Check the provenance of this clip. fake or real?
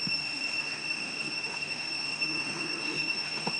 fake